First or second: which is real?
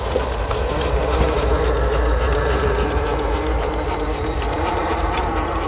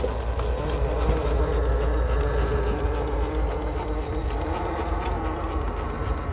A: second